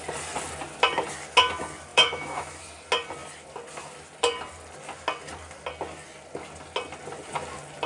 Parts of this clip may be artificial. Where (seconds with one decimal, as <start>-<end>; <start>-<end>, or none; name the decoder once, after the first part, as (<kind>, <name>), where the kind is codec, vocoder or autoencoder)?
1.9-2.6 (autoencoder, DAC-VAE)